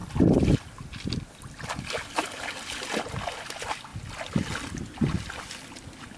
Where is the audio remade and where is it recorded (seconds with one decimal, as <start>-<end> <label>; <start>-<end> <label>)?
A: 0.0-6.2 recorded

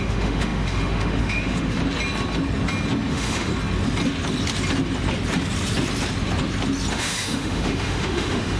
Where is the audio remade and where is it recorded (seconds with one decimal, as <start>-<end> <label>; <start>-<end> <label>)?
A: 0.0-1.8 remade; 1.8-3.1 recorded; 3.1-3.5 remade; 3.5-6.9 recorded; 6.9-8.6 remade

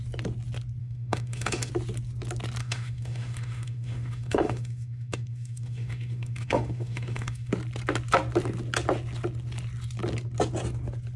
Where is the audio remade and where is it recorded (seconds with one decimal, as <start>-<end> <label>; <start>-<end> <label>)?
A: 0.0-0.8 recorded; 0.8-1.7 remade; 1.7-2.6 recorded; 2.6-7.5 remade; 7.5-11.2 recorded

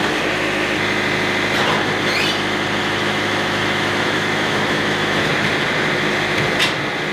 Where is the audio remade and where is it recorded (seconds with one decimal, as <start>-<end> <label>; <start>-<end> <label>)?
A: 0.0-2.8 recorded; 2.8-5.3 remade; 5.3-7.1 recorded

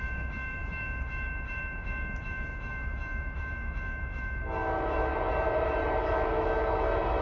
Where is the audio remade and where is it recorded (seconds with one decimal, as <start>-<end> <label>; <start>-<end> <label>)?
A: 0.0-5.1 remade; 5.1-6.0 recorded; 6.0-7.2 remade

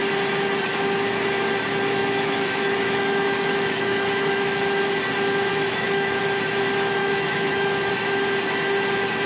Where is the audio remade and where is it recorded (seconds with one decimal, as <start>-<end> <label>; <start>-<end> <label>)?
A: 0.0-2.0 recorded; 2.0-4.8 remade; 4.8-5.5 recorded; 5.5-6.2 remade; 6.2-7.0 recorded; 7.0-7.9 remade; 7.9-9.3 recorded

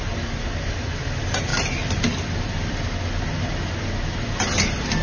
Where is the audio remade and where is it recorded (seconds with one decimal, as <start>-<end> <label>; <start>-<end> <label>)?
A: 0.0-5.0 recorded